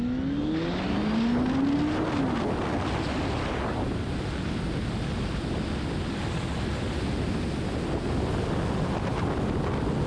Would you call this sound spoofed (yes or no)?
no